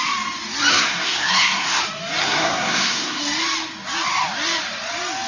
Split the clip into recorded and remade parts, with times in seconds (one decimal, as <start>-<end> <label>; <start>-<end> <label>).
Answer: 0.0-0.7 recorded; 0.7-1.8 remade; 1.8-2.2 recorded; 2.2-3.2 remade; 3.2-5.3 recorded